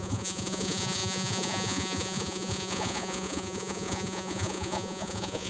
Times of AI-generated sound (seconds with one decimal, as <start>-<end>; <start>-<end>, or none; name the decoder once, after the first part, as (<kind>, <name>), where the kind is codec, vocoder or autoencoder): 0.0-5.5 (vocoder, Vocos)